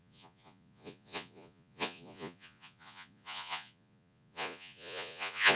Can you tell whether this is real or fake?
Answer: fake